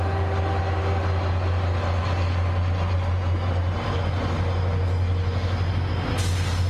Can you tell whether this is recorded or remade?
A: recorded